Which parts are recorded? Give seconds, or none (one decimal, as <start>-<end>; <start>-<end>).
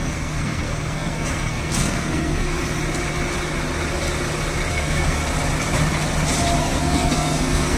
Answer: 2.6-4.7; 5.2-6.6